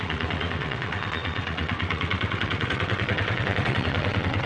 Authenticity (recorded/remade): remade